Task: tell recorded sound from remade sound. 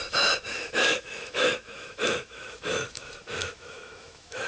remade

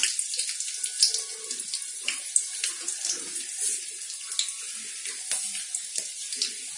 recorded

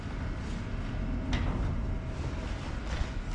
recorded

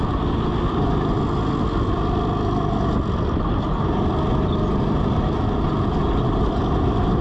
recorded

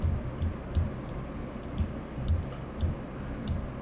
recorded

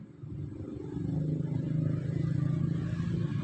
recorded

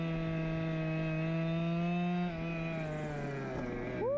recorded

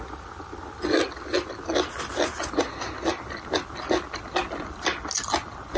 recorded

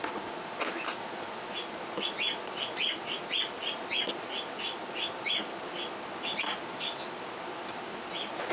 recorded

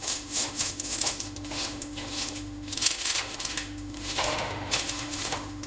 remade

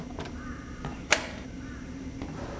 recorded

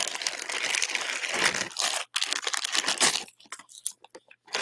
recorded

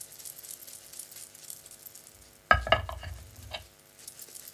recorded